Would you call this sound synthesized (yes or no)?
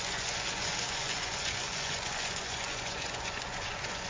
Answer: yes